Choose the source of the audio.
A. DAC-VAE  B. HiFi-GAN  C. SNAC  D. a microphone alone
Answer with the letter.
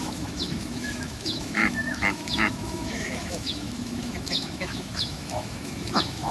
A